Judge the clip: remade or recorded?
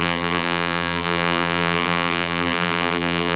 remade